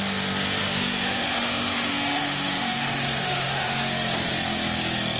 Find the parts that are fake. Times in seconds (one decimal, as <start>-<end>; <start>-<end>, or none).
0.6-3.7